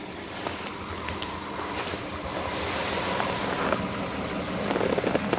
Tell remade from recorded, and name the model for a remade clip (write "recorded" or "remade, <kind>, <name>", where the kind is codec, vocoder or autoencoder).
recorded